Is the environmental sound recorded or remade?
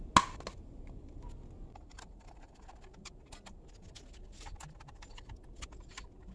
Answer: recorded